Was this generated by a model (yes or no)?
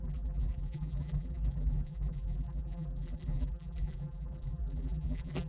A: yes